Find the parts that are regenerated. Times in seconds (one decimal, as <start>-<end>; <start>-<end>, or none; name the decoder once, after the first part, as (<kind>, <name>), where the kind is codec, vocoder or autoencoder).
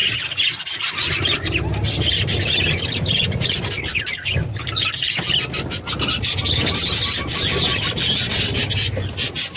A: none